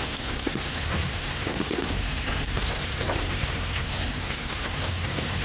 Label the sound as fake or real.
fake